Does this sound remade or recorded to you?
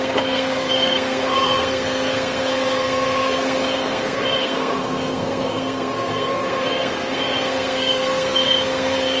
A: remade